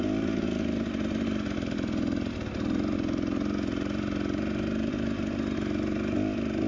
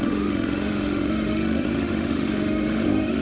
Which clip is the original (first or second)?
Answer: first